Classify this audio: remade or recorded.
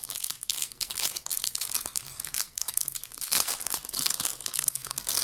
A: remade